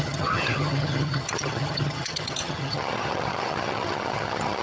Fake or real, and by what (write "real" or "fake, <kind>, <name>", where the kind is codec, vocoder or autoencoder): fake, vocoder, HiFi-GAN